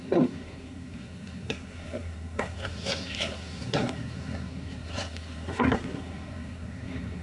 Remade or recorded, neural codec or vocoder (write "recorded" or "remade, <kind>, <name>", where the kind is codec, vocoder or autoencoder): remade, codec, SNAC